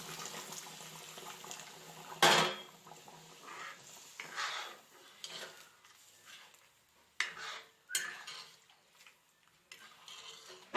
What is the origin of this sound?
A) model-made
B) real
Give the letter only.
B